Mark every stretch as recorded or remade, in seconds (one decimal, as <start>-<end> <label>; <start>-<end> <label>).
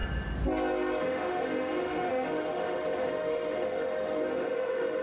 0.0-1.0 recorded; 1.0-5.0 remade